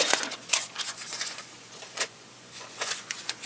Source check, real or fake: fake